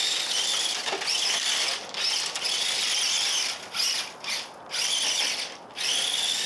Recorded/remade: recorded